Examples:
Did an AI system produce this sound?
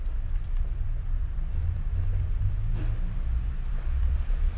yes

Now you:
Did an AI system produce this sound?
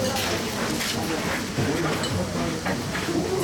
no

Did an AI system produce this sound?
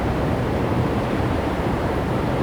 yes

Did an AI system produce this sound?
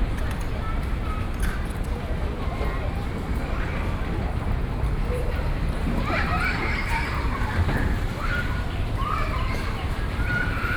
yes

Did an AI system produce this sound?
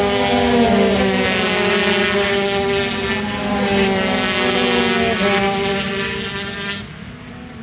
no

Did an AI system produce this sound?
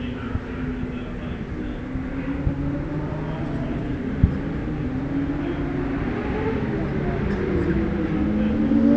no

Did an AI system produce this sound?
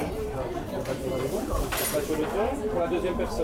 yes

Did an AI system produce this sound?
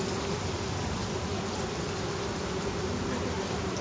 no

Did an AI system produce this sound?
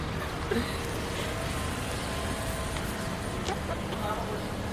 no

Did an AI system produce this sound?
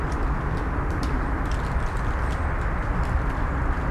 no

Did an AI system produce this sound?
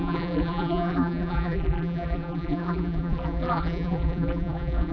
yes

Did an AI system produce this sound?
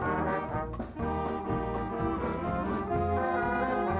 no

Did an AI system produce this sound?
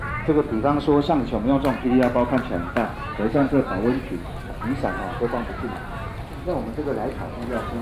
no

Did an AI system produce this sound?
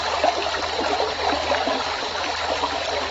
no